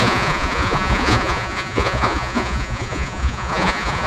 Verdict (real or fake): fake